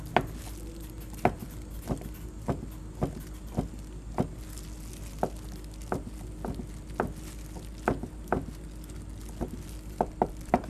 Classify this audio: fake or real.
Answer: real